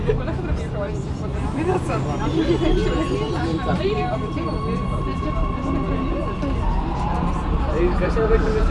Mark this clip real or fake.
real